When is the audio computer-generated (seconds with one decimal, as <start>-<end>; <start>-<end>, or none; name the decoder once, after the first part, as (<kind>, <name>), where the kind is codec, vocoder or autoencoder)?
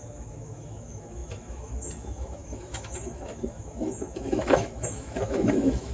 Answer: 0.0-5.9 (autoencoder, DAC-VAE)